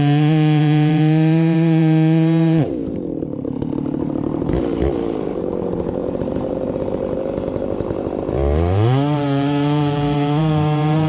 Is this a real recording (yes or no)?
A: no